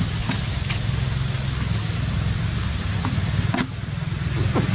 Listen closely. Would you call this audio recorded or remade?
recorded